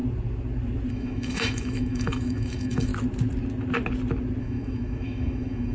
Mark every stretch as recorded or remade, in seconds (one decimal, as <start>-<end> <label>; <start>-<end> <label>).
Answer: 0.0-0.9 recorded; 0.9-2.9 remade; 2.9-4.4 recorded; 4.4-5.7 remade